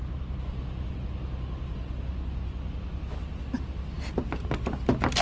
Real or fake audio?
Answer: real